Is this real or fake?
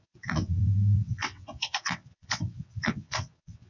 fake